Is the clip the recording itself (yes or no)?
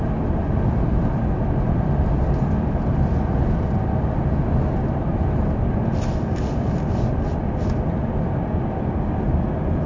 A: yes